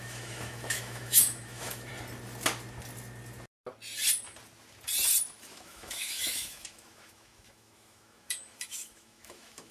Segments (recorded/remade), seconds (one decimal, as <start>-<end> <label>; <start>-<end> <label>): 0.0-1.9 remade; 1.9-5.4 recorded; 5.4-9.7 remade